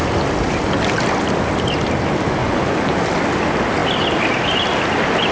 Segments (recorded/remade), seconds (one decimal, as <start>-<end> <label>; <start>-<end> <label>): 0.0-2.4 recorded; 2.4-3.0 remade; 3.0-5.3 recorded

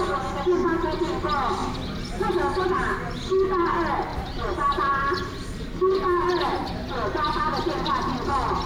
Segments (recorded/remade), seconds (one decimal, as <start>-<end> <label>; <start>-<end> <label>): 0.0-4.1 recorded; 4.1-8.7 remade

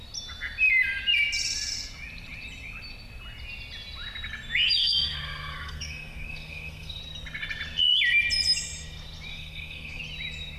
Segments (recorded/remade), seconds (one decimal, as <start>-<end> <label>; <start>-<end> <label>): 0.0-4.8 recorded; 4.8-7.0 remade; 7.0-9.3 recorded; 9.3-10.0 remade; 10.0-10.6 recorded

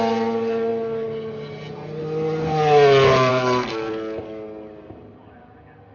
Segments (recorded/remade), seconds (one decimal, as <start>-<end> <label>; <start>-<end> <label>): 0.0-3.3 recorded; 3.3-3.9 remade; 3.9-5.9 recorded

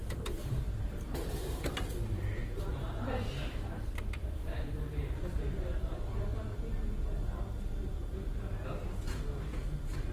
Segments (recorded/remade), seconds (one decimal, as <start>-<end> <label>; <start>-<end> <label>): 0.0-0.6 remade; 0.6-1.2 recorded; 1.2-6.1 remade; 6.1-7.9 recorded; 7.9-8.6 remade; 8.6-10.1 recorded